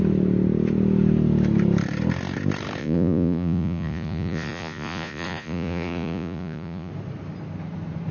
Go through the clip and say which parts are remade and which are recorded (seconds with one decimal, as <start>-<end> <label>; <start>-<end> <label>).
0.0-2.8 recorded; 2.8-6.9 remade; 6.9-8.1 recorded